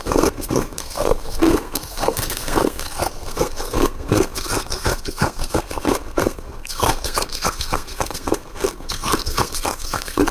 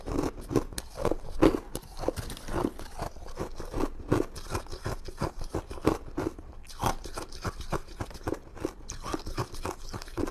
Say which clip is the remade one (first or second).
first